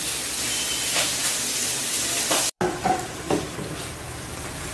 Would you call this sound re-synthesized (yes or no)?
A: yes